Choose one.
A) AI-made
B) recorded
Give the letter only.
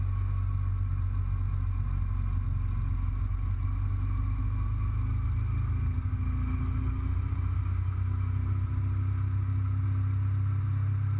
B